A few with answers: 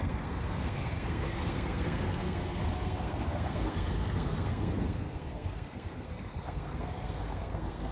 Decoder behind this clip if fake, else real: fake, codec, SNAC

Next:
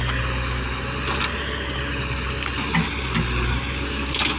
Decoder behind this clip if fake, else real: real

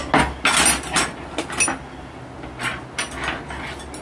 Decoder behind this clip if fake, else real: real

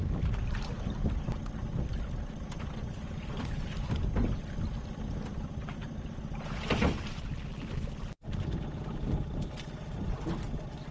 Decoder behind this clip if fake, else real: real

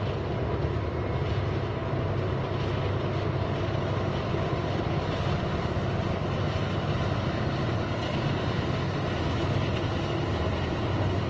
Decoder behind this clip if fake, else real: real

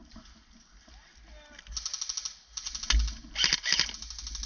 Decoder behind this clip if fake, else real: real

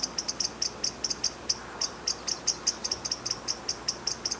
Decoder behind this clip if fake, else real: real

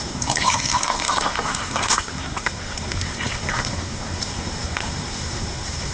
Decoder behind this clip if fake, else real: fake, codec, SNAC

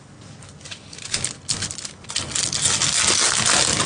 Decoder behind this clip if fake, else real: real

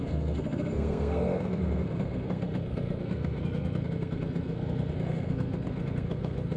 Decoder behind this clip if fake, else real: fake, codec, SNAC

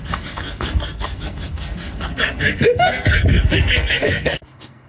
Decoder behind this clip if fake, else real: fake, codec, SNAC